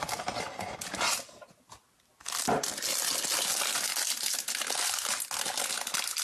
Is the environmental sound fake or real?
real